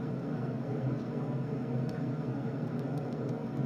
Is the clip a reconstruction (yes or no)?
yes